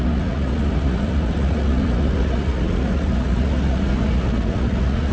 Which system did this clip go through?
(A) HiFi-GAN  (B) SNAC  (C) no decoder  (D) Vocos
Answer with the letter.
D